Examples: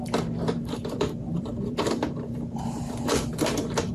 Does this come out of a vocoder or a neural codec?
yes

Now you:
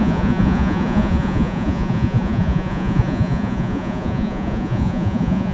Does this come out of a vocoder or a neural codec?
yes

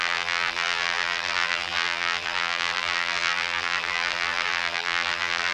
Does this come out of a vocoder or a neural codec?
yes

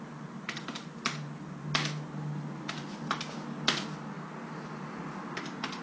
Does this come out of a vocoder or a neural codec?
no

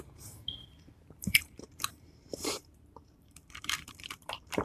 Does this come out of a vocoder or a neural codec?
yes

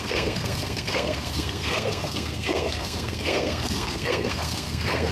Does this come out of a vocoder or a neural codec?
yes